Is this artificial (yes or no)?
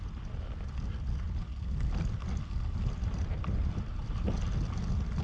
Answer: no